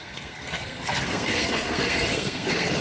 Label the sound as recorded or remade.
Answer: remade